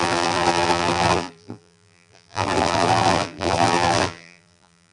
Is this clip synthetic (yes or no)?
yes